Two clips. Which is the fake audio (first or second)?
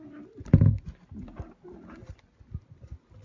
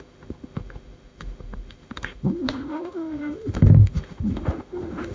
second